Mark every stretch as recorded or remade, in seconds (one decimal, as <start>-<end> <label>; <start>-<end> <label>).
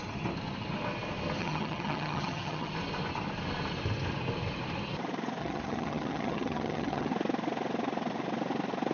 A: 0.0-1.4 recorded; 1.4-2.7 remade; 2.7-5.4 recorded; 5.4-7.1 remade; 7.1-8.9 recorded